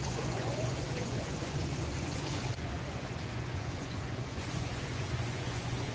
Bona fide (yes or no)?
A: no